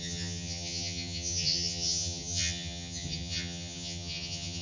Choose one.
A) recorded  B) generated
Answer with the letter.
B